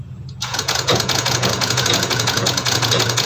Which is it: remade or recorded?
remade